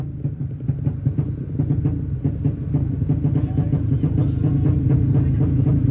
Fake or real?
real